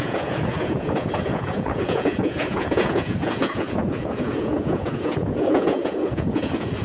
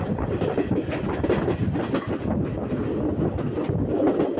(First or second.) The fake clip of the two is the first